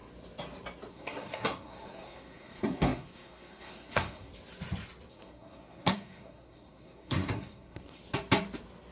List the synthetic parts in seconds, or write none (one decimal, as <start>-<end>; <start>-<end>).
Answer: 0.9-4.3; 5.1-8.0